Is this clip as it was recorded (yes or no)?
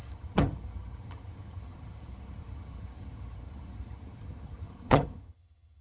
no